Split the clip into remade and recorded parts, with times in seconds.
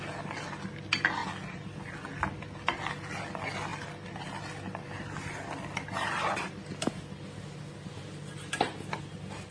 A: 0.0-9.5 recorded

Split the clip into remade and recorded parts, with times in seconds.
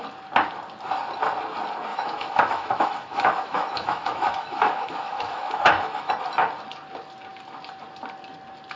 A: 0.0-1.9 recorded; 1.9-6.1 remade; 6.1-8.8 recorded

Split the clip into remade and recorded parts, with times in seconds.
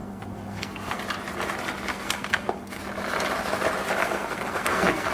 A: 0.0-1.0 remade; 1.0-1.9 recorded; 1.9-2.8 remade; 2.8-4.0 recorded; 4.0-5.1 remade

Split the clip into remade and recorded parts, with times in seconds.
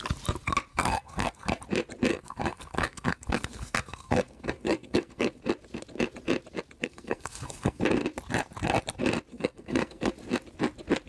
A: 0.0-0.7 recorded; 0.7-1.6 remade; 1.6-2.1 recorded; 2.1-5.4 remade; 5.4-6.8 recorded; 6.8-7.8 remade; 7.8-9.3 recorded; 9.3-10.1 remade; 10.1-11.1 recorded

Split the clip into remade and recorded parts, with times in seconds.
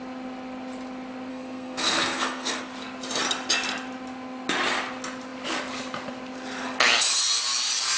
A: 0.0-1.3 recorded; 1.3-2.6 remade; 2.6-8.0 recorded